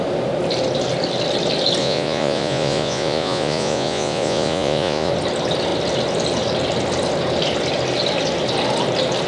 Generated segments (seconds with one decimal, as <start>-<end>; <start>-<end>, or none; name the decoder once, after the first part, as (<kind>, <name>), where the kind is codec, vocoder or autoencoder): 1.8-5.1 (vocoder, Vocos)

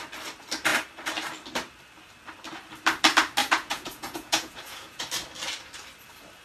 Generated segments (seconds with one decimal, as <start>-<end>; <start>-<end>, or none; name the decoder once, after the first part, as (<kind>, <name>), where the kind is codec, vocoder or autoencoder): 3.4-5.0 (vocoder, Vocos)

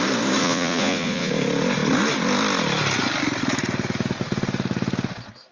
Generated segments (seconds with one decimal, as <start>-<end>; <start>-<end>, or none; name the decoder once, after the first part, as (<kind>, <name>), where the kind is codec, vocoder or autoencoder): 0.4-1.3 (vocoder, Vocos)

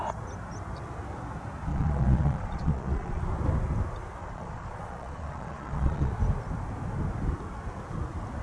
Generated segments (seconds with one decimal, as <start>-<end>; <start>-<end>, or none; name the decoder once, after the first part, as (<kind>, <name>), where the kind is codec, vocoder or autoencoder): 1.7-3.2 (vocoder, Vocos); 4.2-6.1